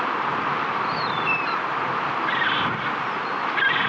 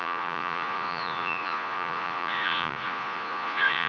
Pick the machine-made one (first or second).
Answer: second